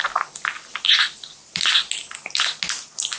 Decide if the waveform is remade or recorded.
recorded